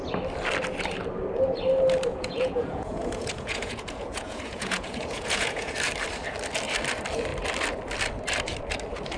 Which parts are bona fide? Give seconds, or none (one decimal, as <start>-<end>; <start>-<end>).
0.0-2.1; 5.7-9.2